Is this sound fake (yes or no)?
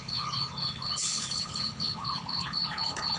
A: yes